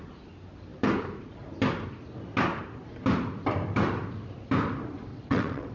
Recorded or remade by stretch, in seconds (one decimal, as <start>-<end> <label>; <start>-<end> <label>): 0.0-5.1 recorded; 5.1-5.7 remade